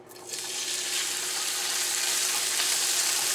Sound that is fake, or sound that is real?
fake